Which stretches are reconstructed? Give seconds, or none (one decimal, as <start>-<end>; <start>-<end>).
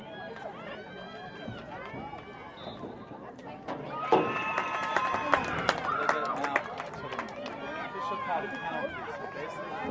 3.4-6.3